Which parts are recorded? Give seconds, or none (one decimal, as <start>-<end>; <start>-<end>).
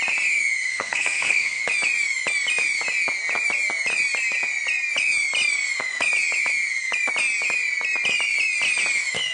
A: 0.0-0.7; 1.6-9.3